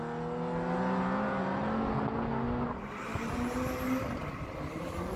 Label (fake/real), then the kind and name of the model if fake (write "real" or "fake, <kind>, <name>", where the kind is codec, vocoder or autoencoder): real